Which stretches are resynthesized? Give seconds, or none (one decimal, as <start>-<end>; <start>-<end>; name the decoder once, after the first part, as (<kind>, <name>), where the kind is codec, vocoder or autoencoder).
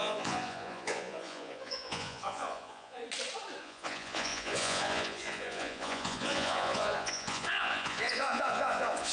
0.0-3.0 (vocoder, Vocos); 3.6-9.1